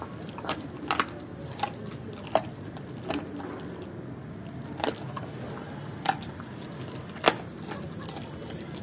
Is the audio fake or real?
real